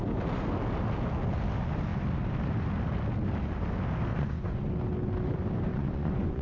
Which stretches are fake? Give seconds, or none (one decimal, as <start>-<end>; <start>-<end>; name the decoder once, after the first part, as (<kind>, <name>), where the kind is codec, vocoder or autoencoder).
4.1-4.6 (vocoder, Vocos); 5.7-6.4